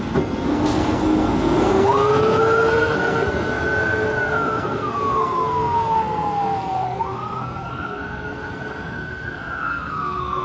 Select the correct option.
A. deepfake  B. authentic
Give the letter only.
A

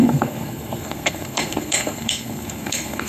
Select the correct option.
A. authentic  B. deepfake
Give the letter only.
B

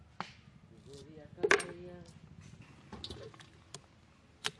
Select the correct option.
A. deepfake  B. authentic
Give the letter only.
B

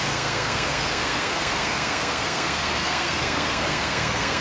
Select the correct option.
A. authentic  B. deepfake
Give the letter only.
B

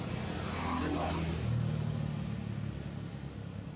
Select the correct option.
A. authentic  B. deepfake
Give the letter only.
A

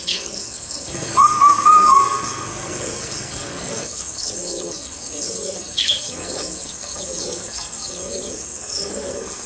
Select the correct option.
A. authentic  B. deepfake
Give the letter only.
B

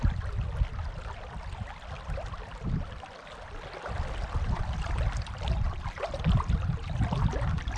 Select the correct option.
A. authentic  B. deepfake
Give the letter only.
A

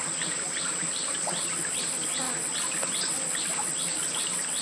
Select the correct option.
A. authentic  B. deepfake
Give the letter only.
A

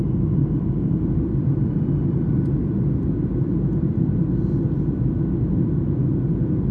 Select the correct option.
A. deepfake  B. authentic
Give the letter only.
B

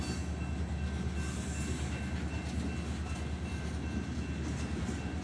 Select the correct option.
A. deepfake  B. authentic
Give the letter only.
B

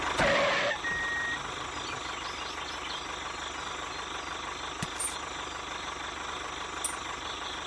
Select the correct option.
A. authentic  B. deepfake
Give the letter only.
A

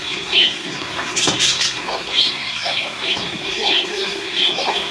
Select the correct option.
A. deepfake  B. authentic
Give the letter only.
A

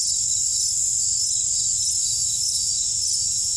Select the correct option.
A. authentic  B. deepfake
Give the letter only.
A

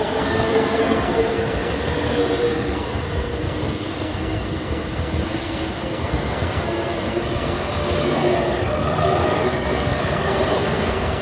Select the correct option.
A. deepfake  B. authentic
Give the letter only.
A